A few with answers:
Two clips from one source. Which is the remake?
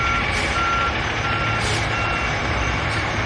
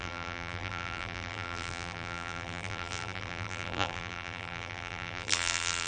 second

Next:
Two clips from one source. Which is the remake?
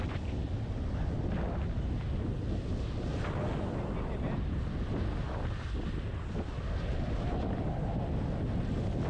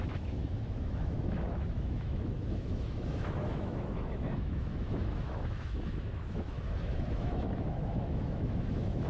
second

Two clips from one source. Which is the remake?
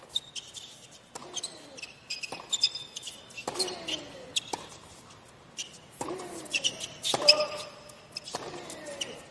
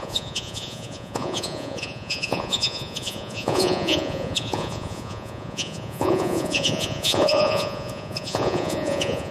second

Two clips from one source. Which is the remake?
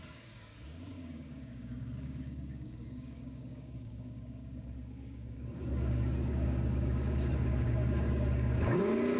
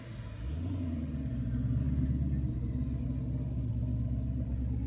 first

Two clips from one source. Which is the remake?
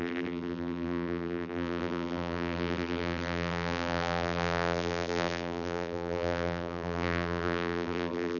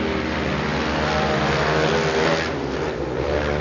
first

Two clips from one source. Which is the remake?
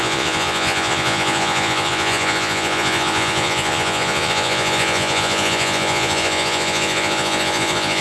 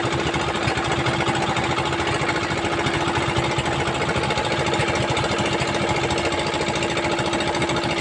first